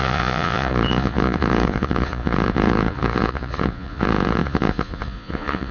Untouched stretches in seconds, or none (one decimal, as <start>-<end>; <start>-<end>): none